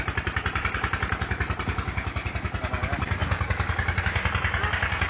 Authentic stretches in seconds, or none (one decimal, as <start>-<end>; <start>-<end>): 3.2-4.0